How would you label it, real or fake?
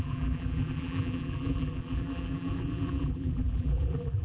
fake